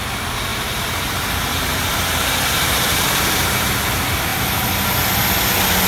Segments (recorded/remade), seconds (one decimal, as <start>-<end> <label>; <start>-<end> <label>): 0.0-0.5 recorded; 0.5-3.7 remade; 3.7-5.9 recorded